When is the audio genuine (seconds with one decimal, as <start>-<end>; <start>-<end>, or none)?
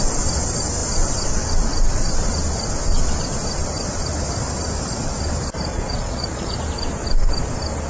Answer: 0.0-5.7; 6.6-7.9